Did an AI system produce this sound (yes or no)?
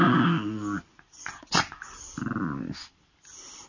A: no